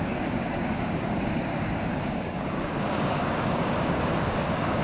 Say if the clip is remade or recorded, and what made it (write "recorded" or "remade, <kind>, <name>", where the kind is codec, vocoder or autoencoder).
remade, codec, DAC